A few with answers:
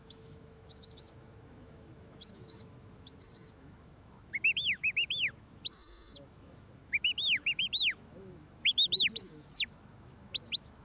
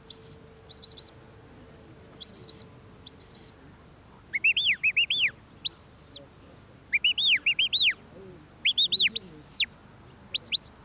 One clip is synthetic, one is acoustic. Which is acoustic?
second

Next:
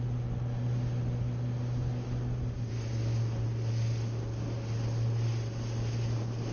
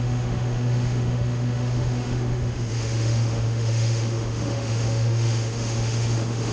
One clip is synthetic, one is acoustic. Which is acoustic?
first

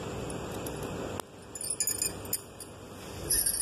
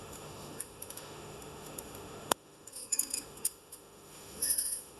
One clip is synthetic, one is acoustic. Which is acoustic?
first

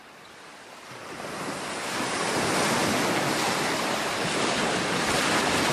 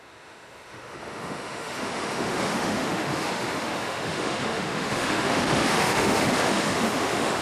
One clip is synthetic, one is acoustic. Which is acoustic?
first